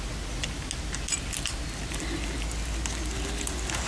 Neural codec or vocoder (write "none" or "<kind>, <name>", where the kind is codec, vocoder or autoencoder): none